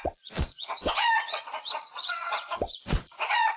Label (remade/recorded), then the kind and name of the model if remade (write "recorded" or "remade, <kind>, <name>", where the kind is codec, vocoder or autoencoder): remade, vocoder, Vocos